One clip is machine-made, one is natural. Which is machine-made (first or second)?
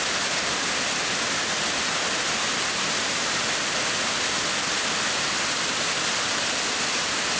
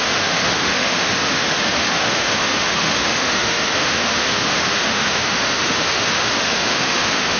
second